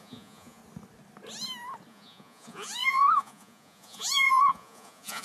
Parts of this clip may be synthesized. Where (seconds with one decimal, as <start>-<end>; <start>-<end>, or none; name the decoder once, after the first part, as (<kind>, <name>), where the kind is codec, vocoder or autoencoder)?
0.0-0.6 (vocoder, Vocos); 1.9-5.2